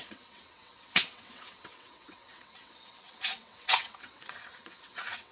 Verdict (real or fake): fake